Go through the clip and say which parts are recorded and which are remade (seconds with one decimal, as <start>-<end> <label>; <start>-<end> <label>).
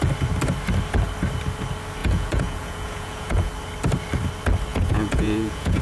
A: 0.0-2.0 recorded; 2.0-3.5 remade; 3.5-4.7 recorded; 4.7-5.8 remade